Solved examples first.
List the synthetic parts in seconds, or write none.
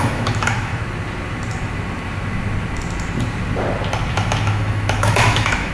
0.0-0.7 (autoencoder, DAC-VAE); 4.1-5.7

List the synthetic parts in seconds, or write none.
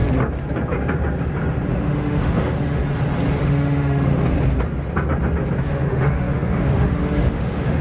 1.7-2.8 (autoencoder, DAC-VAE); 3.4-4.1; 5.6-7.8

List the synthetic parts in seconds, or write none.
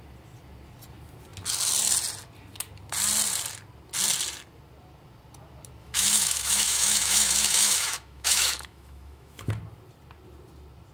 5.8-9.5 (autoencoder, DAC-VAE)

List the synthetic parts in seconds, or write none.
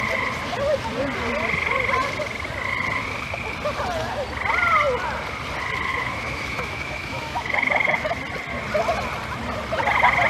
5.9-8.1 (autoencoder, DAC-VAE)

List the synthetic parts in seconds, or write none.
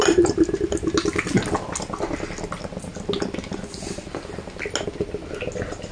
none